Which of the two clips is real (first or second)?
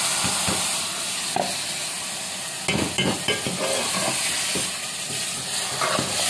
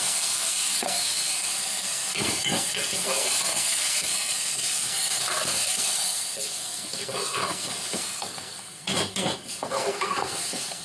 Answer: first